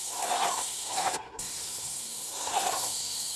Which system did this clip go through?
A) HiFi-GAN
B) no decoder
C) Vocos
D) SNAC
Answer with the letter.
D